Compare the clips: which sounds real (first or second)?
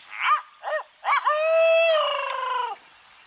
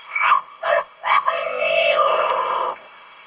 first